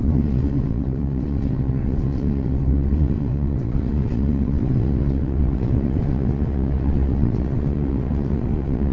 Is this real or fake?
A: fake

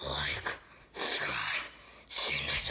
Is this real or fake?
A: real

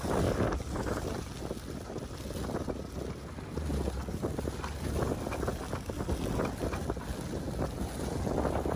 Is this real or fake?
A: real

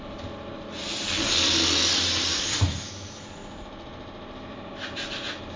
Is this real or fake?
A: real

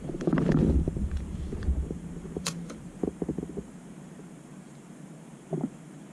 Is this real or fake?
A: fake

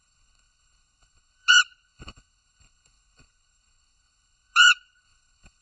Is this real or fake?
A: fake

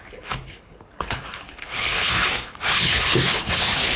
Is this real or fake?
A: fake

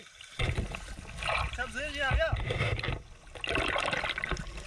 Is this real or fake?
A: real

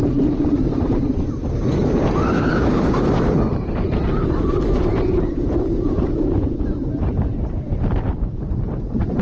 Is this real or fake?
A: fake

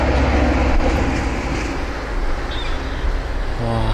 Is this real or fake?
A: real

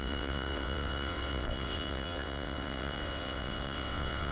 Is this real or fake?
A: fake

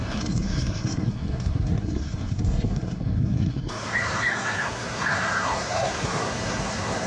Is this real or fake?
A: fake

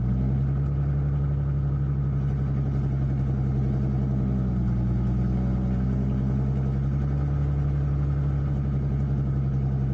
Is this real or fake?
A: real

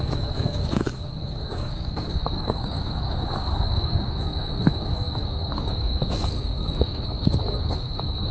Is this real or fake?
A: fake